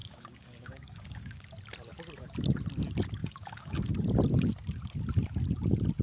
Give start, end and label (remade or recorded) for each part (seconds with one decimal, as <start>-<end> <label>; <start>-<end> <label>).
0.0-1.5 remade; 1.5-3.2 recorded; 3.2-3.9 remade; 3.9-6.0 recorded